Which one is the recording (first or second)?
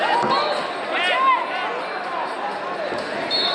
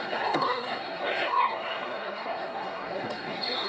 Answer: first